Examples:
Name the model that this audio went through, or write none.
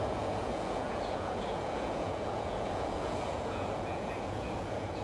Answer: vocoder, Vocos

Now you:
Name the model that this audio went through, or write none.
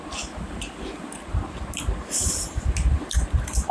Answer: none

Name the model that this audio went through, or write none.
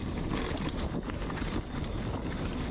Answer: none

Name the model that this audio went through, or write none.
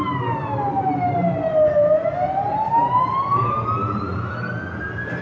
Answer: none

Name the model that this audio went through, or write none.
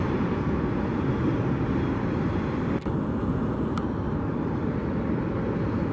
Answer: none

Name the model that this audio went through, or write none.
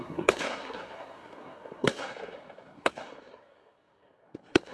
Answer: codec, SNAC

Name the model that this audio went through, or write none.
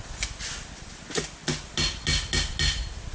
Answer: none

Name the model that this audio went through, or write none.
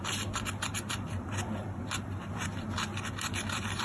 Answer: vocoder, BigVGAN v2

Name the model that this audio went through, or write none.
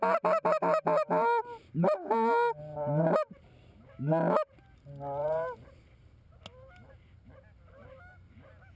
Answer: none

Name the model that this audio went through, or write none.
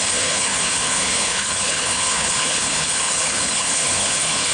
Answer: codec, HILCodec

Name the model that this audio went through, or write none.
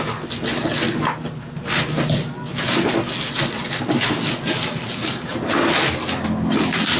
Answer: none